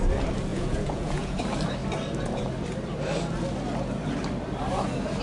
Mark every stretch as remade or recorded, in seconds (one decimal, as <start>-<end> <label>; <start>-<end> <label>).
0.0-0.5 recorded; 0.5-1.4 remade; 1.4-5.2 recorded